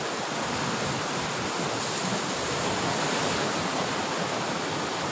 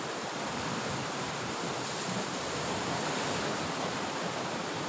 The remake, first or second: second